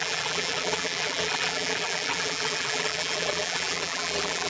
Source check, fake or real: fake